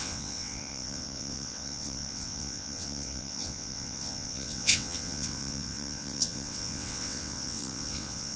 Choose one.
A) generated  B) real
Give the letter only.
A